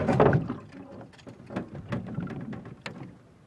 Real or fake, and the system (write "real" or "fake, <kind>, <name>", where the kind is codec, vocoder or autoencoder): real